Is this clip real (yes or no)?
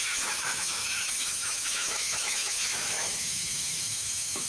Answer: no